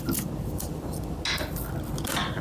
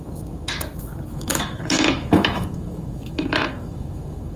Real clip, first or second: first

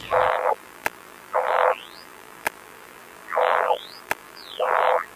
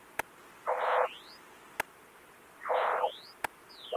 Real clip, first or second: second